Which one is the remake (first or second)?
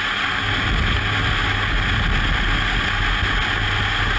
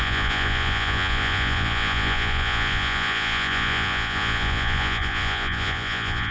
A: second